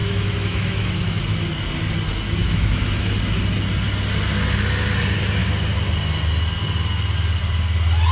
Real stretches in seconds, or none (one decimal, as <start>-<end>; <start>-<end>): 1.2-2.4; 3.1-8.1